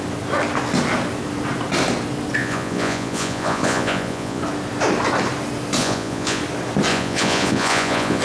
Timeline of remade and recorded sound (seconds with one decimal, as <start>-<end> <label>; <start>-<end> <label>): 0.0-2.4 recorded; 2.4-4.4 remade; 4.4-5.8 recorded; 5.8-6.4 remade; 6.4-6.9 recorded; 6.9-8.2 remade